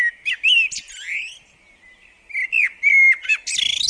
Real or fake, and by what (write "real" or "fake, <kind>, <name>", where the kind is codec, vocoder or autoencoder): real